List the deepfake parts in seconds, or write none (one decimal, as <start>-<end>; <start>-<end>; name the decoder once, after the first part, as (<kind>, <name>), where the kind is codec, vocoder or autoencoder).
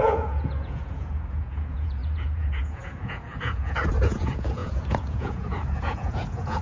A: 0.0-6.6 (vocoder, Vocos)